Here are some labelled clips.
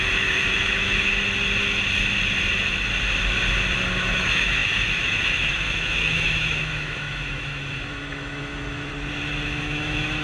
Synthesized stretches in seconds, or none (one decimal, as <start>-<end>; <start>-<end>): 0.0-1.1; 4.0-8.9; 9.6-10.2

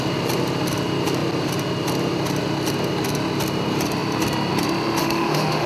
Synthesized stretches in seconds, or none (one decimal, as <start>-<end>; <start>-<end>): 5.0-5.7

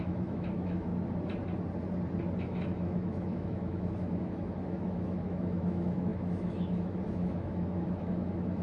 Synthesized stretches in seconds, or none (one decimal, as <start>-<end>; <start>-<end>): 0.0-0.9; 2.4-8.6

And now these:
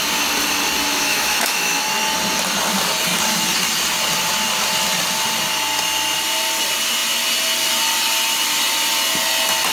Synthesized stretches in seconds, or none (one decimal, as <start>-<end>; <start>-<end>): 0.9-1.8

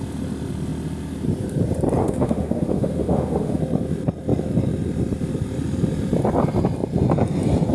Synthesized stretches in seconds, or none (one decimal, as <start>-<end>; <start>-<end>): 2.0-3.6